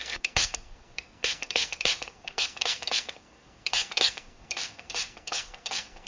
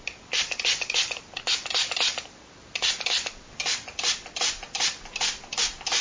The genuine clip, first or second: second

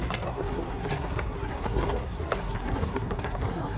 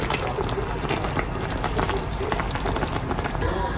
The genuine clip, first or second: second